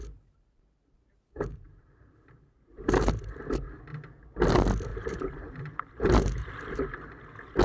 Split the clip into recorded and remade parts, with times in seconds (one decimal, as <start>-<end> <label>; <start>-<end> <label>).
0.0-3.1 remade; 3.1-4.9 recorded; 4.9-7.1 remade; 7.1-7.6 recorded

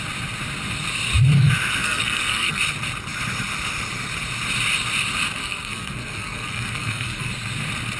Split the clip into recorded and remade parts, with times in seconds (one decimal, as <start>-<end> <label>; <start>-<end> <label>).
0.0-1.8 recorded; 1.8-2.6 remade; 2.6-5.4 recorded; 5.4-7.3 remade; 7.3-8.0 recorded

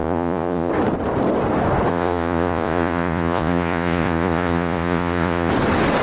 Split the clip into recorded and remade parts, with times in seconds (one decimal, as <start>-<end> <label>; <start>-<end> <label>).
0.0-0.7 remade; 0.7-1.9 recorded; 1.9-5.5 remade; 5.5-6.0 recorded